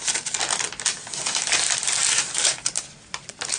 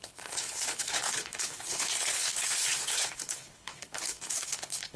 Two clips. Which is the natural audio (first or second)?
first